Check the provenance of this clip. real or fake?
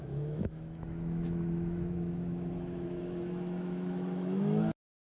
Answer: fake